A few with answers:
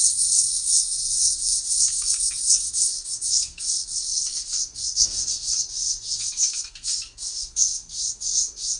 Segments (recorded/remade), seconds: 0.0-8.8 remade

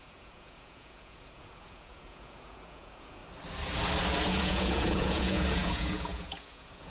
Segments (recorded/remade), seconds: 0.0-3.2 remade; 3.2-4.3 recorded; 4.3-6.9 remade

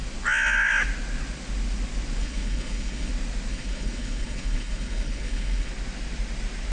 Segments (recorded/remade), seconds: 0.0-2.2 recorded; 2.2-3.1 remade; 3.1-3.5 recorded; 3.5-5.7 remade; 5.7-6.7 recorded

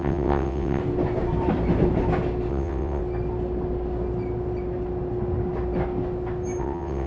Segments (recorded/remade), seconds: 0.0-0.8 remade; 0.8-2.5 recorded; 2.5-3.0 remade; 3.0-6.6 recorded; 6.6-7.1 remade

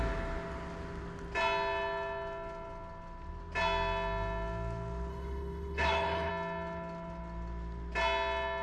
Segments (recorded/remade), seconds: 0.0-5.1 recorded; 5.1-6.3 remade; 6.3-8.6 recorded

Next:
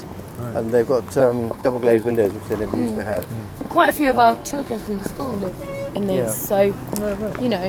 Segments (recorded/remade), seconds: 0.0-1.2 recorded; 1.2-2.1 remade; 2.1-2.7 recorded; 2.7-5.4 remade; 5.4-7.7 recorded